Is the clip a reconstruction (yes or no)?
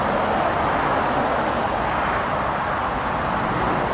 no